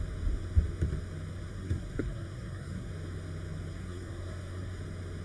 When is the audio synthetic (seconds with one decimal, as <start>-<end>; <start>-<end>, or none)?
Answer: 1.3-2.9; 3.7-4.8